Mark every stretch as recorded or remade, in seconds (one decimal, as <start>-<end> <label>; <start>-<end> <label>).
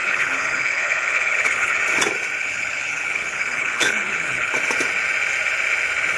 0.0-1.8 remade; 1.8-2.4 recorded; 2.4-4.5 remade; 4.5-6.2 recorded